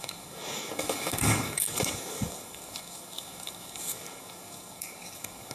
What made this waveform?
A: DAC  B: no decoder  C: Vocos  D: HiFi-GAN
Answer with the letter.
A